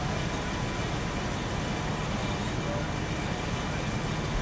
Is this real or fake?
real